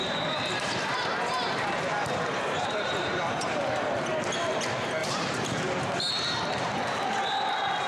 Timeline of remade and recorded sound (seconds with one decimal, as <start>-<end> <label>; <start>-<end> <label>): 0.0-4.3 remade; 4.3-5.0 recorded; 5.0-6.1 remade; 6.1-7.9 recorded